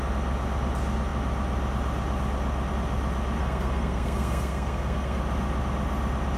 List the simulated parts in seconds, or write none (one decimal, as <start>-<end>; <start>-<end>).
3.4-5.2